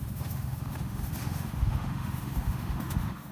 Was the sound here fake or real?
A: fake